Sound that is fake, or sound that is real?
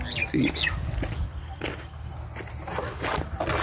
real